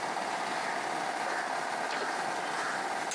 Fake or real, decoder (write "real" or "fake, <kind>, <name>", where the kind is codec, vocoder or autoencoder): real